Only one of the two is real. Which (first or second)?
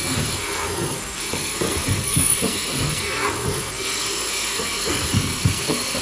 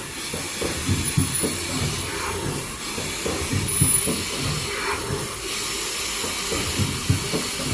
second